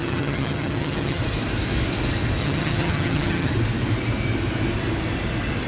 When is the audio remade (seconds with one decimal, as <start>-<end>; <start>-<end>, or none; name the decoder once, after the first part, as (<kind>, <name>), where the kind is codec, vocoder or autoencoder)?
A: 0.0-1.2 (vocoder, HiFi-GAN); 2.4-3.5